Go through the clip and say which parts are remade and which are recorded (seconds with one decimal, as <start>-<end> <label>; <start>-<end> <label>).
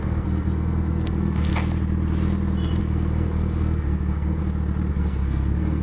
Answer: 0.0-1.5 remade; 1.5-2.8 recorded; 2.8-4.4 remade; 4.4-4.9 recorded; 4.9-5.8 remade